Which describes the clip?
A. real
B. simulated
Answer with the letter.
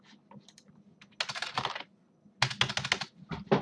A